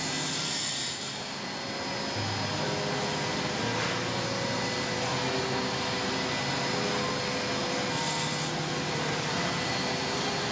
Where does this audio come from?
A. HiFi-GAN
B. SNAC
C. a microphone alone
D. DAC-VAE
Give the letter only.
C